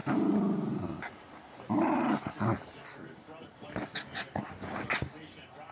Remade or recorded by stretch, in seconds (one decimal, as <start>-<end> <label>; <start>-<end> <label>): 0.0-5.7 recorded